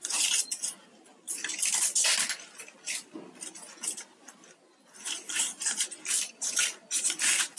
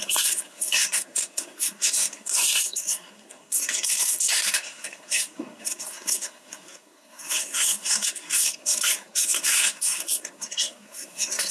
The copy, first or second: second